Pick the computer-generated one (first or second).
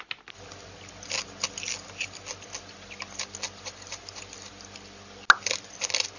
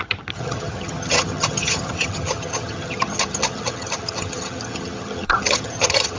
second